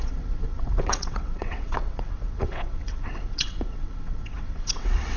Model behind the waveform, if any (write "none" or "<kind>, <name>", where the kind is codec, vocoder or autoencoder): vocoder, WaveNeXt